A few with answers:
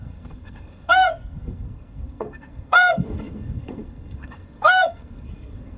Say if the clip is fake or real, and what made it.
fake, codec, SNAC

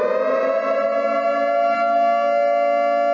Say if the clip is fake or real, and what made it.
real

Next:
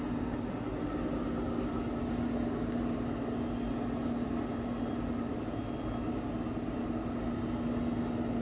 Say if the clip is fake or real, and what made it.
real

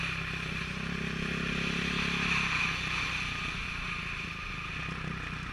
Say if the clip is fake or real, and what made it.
real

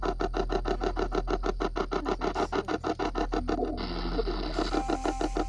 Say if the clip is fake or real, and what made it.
real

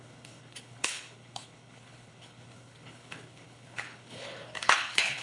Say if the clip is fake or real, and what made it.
fake, codec, HILCodec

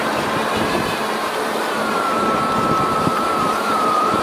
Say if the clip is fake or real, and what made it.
fake, vocoder, BigVGAN v2